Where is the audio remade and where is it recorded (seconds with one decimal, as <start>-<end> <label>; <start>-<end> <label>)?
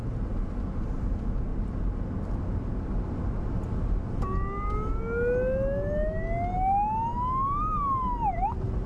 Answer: 0.0-8.9 recorded